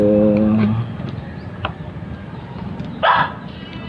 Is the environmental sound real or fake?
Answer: real